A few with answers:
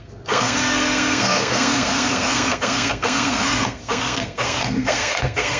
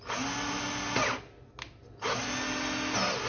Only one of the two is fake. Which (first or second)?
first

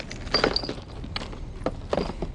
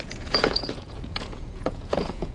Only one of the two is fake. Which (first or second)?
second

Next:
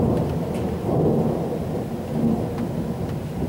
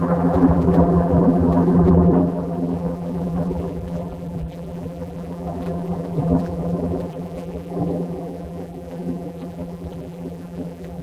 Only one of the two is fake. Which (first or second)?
second